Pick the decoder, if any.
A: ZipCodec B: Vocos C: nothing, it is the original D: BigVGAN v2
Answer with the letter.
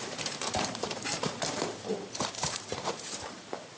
D